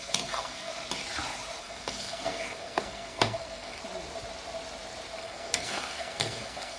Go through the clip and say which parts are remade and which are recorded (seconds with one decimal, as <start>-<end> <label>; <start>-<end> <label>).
0.0-0.7 remade; 0.7-1.6 recorded; 1.6-3.8 remade; 3.8-5.2 recorded; 5.2-6.8 remade